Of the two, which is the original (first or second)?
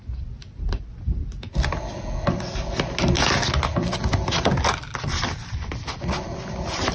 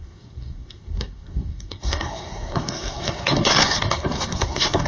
first